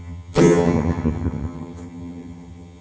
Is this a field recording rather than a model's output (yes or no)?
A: no